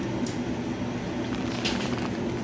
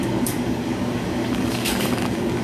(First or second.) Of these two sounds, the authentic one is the first